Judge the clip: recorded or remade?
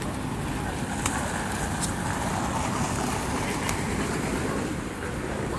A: recorded